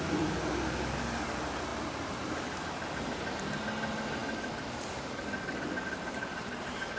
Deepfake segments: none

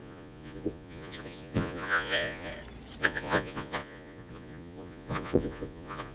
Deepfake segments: 0.0-2.5 (vocoder, Vocos); 3.0-6.1

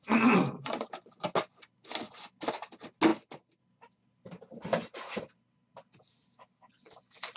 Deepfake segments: none

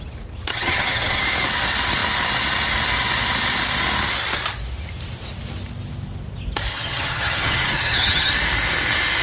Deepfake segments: 0.5-1.2 (vocoder, HiFi-GAN); 6.7-8.3

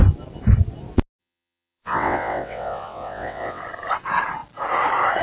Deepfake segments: 1.2-3.6 (vocoder, WaveNeXt)

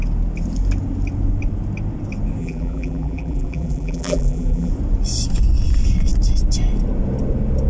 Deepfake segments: 2.4-4.7 (vocoder, BigVGAN v2)

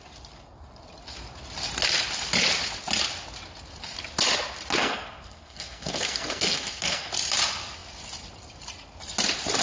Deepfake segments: 4.8-7.1 (codec, SNAC)

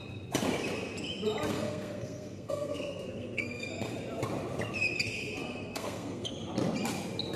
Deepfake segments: 1.5-3.7 (codec, SNAC); 5.4-6.3